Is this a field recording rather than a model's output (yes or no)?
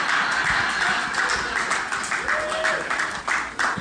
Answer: yes